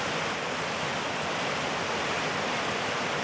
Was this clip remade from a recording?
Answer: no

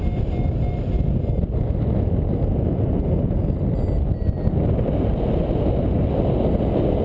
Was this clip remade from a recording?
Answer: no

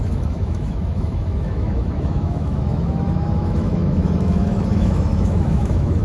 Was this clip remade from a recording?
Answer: yes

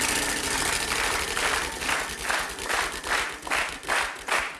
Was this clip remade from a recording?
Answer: no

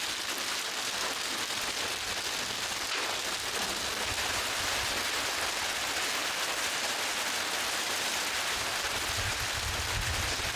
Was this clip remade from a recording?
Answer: no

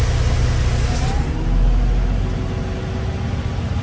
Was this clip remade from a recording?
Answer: no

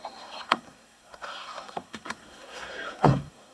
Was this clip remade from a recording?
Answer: yes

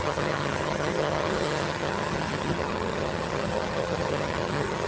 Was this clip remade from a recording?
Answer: yes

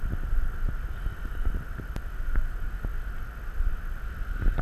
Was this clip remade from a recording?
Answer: no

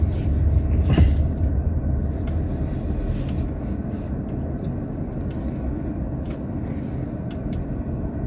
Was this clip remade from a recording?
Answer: no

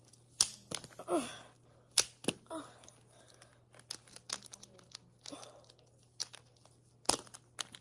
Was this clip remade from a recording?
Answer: no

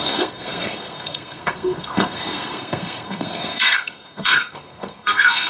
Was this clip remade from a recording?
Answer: yes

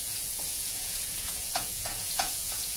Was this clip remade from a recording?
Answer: yes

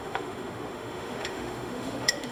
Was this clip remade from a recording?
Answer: yes